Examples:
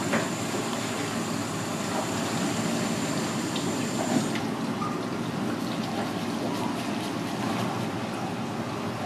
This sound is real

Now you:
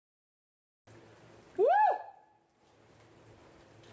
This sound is real